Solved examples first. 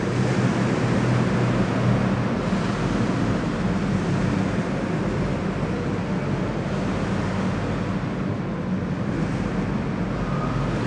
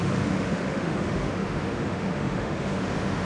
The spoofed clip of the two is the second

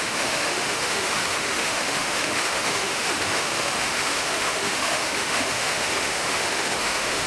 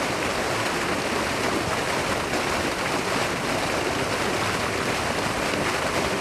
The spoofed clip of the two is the first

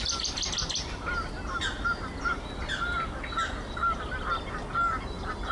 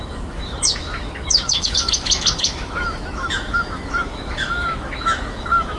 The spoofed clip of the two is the second